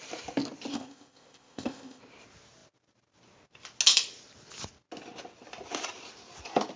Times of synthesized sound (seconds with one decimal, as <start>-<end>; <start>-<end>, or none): 0.7-2.0